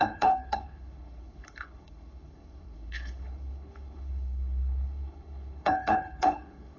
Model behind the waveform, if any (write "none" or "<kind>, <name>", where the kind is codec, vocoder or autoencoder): codec, HILCodec